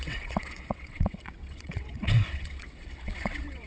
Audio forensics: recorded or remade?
remade